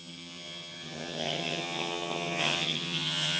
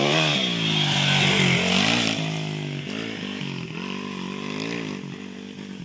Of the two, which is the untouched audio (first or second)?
second